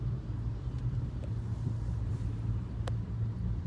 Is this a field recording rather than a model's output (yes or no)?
yes